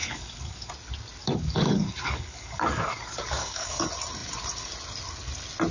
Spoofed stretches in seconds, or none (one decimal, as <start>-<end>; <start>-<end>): 0.0-0.7; 1.2-3.8